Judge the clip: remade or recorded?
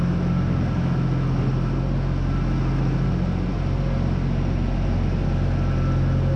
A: recorded